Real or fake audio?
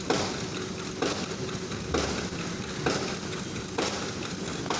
real